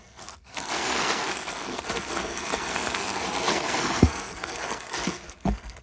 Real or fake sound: fake